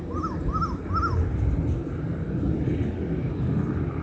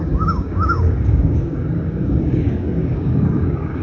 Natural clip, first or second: first